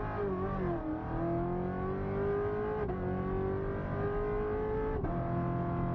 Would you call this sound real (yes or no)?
yes